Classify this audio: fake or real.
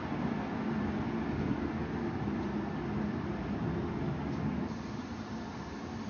real